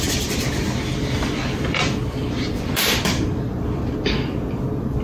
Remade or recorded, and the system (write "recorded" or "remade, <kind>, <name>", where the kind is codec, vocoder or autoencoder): recorded